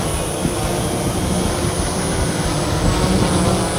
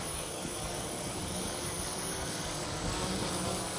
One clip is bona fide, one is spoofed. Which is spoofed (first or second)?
second